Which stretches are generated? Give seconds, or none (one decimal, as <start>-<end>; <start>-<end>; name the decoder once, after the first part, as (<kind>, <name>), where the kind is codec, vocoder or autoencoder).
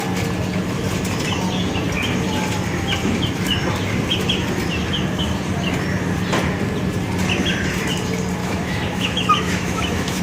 8.4-10.2 (autoencoder, DAC-VAE)